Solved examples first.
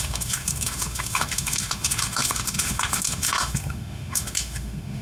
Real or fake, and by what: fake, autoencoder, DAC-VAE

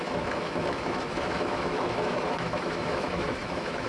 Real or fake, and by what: fake, autoencoder, DAC-VAE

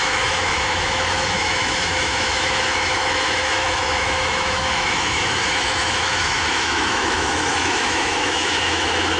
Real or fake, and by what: fake, autoencoder, DAC-VAE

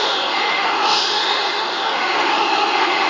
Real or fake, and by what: fake, autoencoder, DAC-VAE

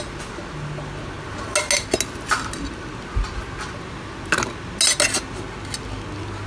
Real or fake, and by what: real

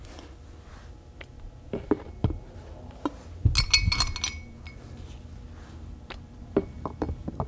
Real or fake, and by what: real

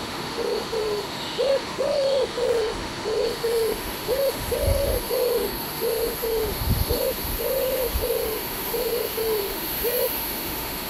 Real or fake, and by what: fake, autoencoder, DAC-VAE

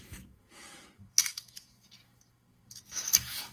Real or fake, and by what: fake, autoencoder, DAC-VAE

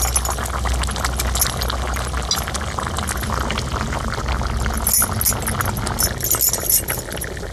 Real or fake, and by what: real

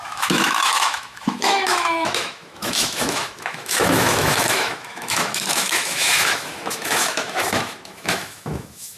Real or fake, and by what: fake, autoencoder, DAC-VAE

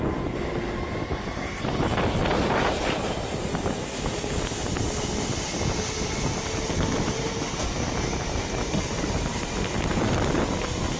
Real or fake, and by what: real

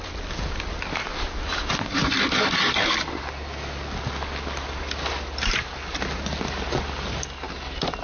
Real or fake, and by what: real